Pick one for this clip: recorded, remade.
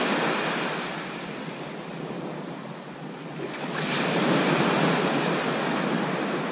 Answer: recorded